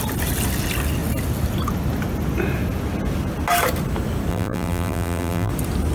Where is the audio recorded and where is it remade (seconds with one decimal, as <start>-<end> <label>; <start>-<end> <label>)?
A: 0.0-4.3 recorded; 4.3-5.5 remade; 5.5-5.9 recorded